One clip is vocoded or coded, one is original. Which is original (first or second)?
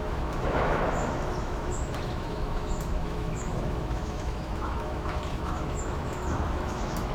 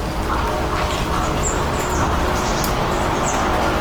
second